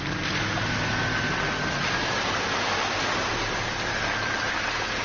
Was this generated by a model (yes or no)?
no